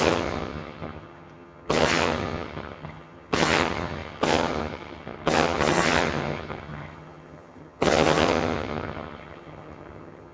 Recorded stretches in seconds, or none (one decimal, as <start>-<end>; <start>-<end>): none